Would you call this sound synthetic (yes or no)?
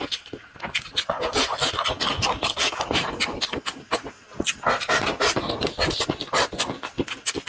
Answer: no